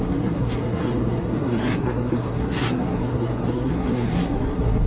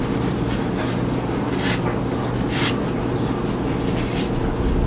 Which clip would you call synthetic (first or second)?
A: first